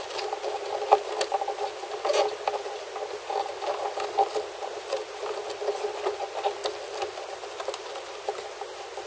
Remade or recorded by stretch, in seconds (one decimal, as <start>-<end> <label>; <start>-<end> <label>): 0.0-9.1 recorded